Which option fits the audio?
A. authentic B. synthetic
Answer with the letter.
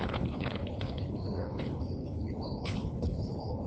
B